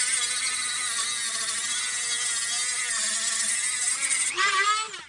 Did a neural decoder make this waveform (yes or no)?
no